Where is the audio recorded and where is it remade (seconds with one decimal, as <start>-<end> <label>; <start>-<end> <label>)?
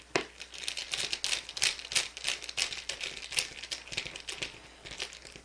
0.0-5.4 recorded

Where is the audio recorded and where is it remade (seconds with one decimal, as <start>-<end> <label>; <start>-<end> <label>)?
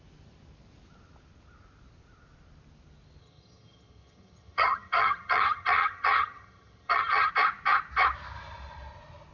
0.0-3.2 recorded; 3.2-7.3 remade; 7.3-9.3 recorded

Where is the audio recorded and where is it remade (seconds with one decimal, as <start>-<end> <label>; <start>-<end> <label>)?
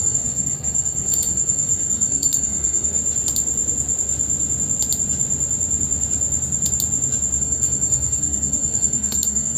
0.0-3.0 remade; 3.0-7.4 recorded; 7.4-9.6 remade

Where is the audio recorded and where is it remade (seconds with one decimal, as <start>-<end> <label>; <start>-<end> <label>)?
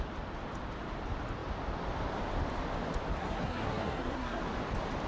0.0-3.2 recorded; 3.2-4.4 remade; 4.4-5.1 recorded